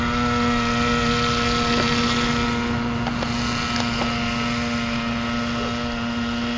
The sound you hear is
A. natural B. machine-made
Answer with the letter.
A